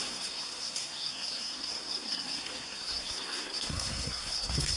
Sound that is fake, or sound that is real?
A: fake